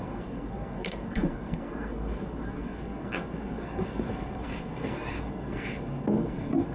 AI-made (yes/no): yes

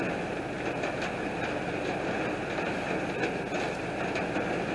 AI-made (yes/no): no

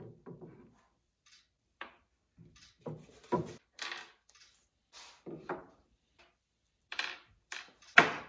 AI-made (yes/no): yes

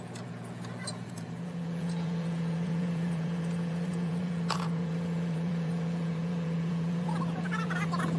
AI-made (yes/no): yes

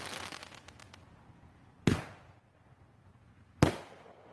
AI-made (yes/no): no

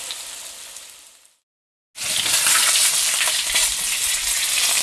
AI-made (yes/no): no